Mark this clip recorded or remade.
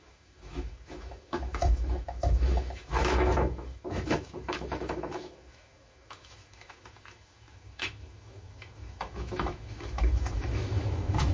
remade